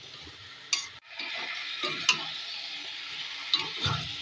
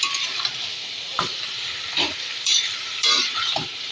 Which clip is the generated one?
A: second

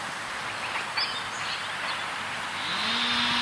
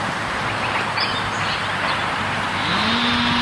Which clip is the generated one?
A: second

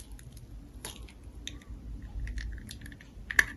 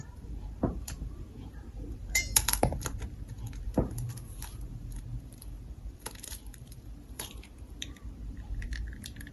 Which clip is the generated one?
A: second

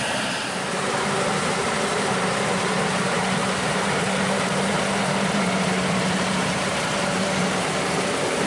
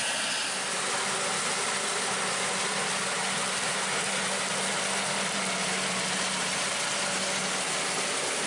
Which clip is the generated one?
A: first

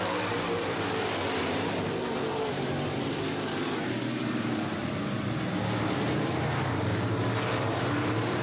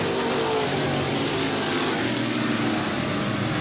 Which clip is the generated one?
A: first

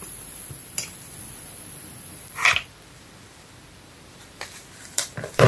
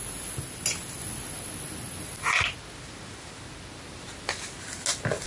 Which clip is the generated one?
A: first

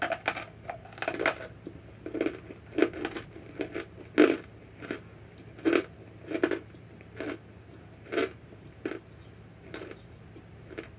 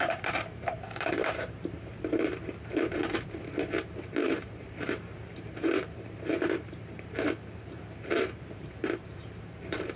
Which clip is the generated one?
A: second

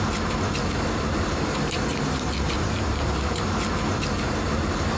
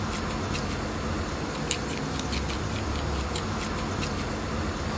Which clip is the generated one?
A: first